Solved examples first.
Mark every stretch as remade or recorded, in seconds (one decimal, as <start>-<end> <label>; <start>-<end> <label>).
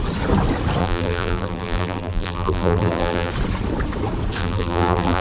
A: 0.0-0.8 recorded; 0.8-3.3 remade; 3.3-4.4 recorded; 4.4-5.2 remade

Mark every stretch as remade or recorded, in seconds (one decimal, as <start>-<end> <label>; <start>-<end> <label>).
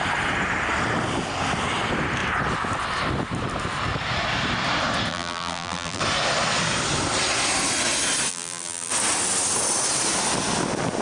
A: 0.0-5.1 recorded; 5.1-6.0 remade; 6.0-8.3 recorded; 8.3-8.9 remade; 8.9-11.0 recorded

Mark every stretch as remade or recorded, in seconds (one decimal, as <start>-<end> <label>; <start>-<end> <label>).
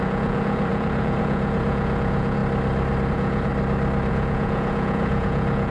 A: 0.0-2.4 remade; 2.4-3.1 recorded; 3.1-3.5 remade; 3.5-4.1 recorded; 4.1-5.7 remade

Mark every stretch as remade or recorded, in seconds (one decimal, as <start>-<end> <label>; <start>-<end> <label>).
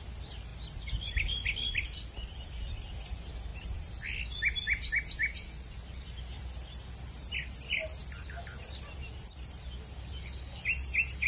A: 0.0-11.3 recorded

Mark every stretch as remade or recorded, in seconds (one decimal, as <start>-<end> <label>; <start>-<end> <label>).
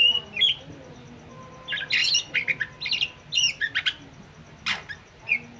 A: 0.0-5.6 recorded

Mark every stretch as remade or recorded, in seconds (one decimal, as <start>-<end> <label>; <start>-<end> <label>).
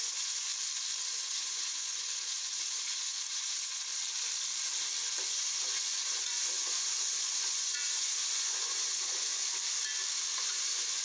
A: 0.0-0.5 remade; 0.5-1.0 recorded; 1.0-3.9 remade; 3.9-5.3 recorded; 5.3-9.3 remade; 9.3-10.4 recorded; 10.4-11.0 remade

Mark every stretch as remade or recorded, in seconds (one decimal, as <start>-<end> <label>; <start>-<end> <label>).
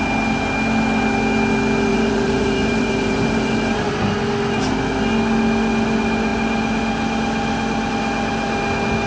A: 0.0-1.9 recorded; 1.9-3.9 remade; 3.9-9.1 recorded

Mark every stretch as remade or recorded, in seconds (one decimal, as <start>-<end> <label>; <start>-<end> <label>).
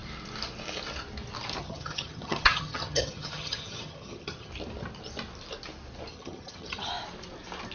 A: 0.0-1.6 recorded; 1.6-4.5 remade; 4.5-6.1 recorded; 6.1-6.9 remade; 6.9-7.7 recorded